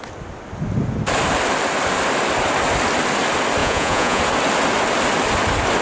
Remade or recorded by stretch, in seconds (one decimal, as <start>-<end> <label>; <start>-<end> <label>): 0.0-3.6 recorded; 3.6-4.2 remade; 4.2-5.8 recorded